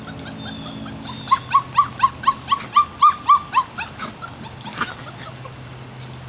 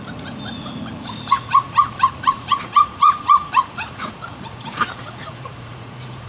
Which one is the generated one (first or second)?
second